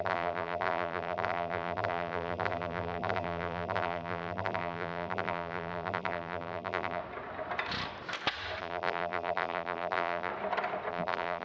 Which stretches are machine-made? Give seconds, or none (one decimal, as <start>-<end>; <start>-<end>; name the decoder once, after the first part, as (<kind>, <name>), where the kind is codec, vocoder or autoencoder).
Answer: 0.0-7.0 (vocoder, BigVGAN v2); 8.6-10.3; 10.9-11.4